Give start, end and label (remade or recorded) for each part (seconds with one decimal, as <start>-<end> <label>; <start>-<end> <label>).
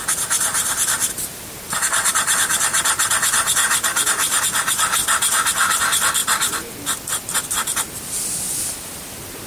0.0-0.5 recorded; 0.5-2.5 remade; 2.5-3.6 recorded; 3.6-4.4 remade; 4.4-5.0 recorded; 5.0-5.8 remade; 5.8-9.5 recorded